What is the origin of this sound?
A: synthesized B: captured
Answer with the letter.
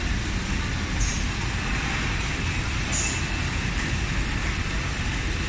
B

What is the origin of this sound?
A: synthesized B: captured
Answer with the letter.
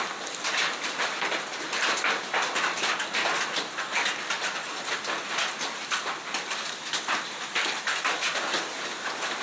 B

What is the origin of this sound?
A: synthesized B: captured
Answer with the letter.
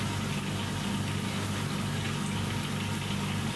B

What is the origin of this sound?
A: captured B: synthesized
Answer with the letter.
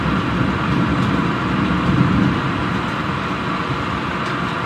A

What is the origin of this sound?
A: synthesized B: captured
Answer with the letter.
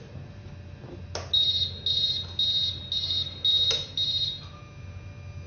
B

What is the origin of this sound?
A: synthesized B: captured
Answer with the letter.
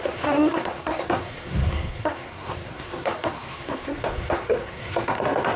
A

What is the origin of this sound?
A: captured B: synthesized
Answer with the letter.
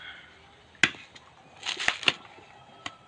A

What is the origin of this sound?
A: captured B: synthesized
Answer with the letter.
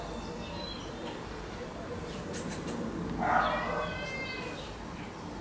A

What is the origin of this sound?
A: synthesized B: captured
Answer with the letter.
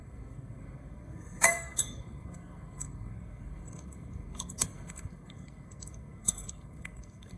A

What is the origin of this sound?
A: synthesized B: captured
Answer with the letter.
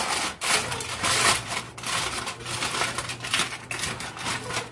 B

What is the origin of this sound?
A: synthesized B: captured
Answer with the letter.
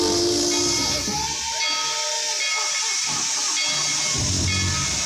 B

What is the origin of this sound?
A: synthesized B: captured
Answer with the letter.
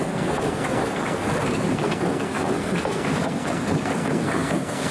A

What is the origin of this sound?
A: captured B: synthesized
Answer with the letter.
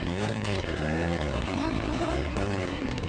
B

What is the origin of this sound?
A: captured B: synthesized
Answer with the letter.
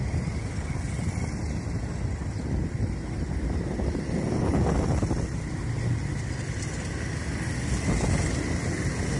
A